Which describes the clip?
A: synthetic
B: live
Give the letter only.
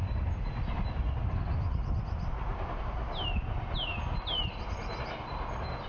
B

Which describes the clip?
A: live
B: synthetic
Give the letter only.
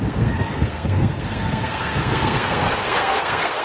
B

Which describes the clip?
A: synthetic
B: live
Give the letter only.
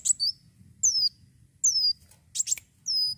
B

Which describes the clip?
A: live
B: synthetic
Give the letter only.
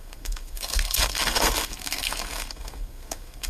B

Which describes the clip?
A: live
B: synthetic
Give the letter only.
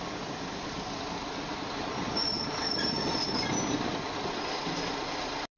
A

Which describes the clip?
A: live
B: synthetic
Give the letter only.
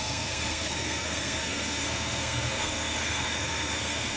B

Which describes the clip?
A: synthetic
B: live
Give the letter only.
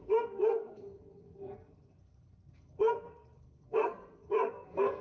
A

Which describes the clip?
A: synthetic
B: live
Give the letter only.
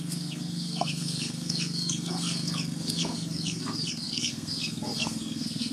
A